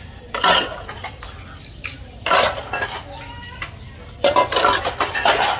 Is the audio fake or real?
real